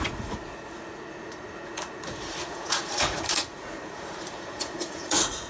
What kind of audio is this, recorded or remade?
remade